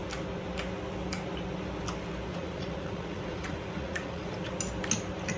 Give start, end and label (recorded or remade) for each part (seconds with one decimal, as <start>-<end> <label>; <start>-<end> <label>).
0.0-2.3 recorded; 2.3-4.3 remade; 4.3-5.4 recorded